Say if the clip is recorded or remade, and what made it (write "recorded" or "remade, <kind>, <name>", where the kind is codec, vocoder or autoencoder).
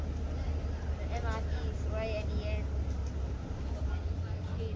recorded